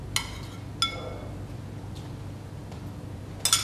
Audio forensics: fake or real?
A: real